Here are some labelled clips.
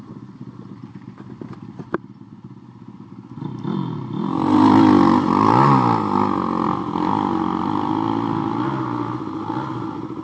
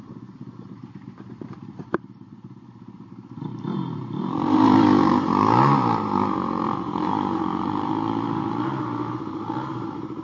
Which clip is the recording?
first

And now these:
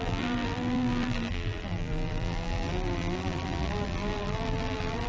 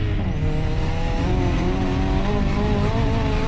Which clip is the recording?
second